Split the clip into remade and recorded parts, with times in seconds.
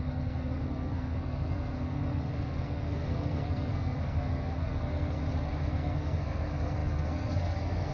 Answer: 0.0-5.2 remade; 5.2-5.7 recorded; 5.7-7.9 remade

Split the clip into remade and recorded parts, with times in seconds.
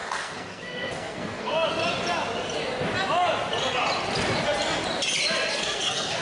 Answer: 0.0-1.8 remade; 1.8-5.5 recorded; 5.5-6.2 remade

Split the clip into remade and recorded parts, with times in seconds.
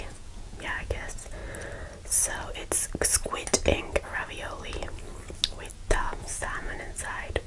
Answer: 0.0-1.4 remade; 1.4-5.9 recorded; 5.9-7.5 remade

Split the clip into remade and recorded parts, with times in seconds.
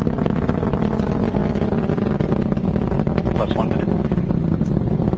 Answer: 0.0-5.2 recorded